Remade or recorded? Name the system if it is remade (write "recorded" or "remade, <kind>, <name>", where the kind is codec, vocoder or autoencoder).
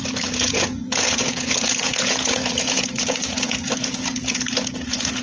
remade, vocoder, Vocos